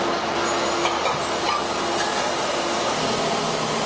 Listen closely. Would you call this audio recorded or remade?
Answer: recorded